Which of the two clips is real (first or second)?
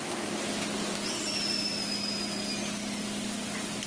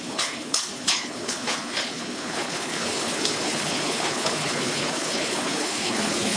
first